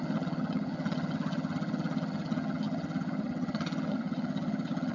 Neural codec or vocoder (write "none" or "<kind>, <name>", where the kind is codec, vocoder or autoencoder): vocoder, HiFi-GAN